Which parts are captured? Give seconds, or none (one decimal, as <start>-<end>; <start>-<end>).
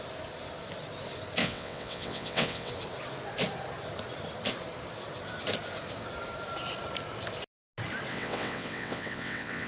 0.0-1.4; 2.7-8.1